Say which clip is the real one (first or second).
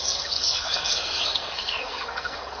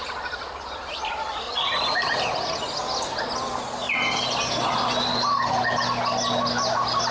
second